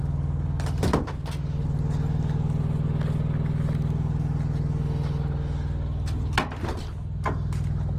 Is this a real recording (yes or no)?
yes